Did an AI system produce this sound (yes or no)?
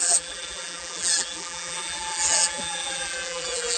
yes